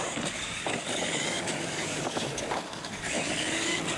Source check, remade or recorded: remade